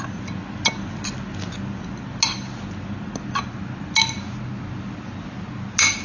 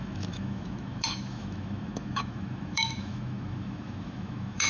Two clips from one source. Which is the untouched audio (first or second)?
first